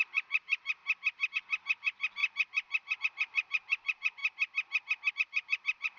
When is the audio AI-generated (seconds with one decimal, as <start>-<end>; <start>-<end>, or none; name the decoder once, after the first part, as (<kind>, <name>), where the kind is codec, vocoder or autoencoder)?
0.0-0.8 (vocoder, BigVGAN v2); 1.3-4.2; 5.1-6.0